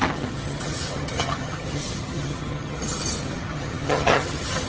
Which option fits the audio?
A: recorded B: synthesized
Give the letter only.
B